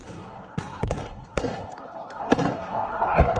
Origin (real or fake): fake